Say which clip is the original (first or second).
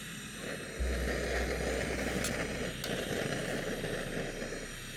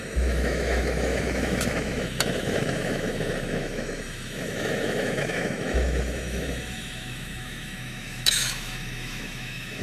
first